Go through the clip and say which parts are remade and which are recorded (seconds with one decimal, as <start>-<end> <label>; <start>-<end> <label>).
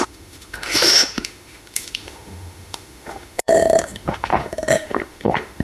0.0-5.6 remade